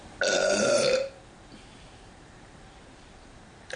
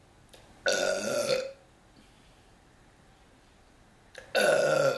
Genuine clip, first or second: second